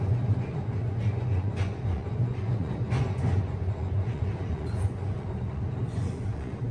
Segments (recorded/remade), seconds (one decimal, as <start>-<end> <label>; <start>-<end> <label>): 0.0-6.7 remade